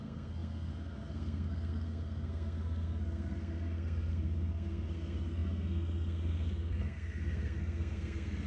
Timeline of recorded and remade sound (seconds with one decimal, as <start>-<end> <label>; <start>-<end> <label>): 0.0-8.5 remade